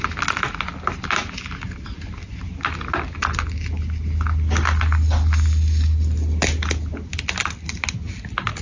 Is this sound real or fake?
real